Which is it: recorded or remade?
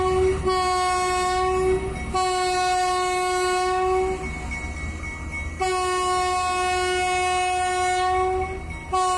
recorded